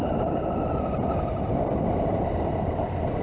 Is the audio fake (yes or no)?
no